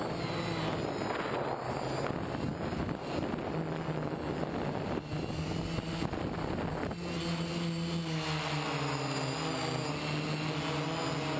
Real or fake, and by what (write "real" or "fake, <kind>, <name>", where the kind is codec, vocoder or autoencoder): real